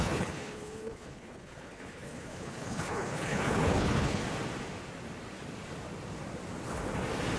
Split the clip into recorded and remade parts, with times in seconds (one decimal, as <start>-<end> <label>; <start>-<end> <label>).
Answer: 0.0-4.2 remade; 4.2-7.4 recorded